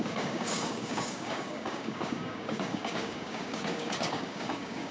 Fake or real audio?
fake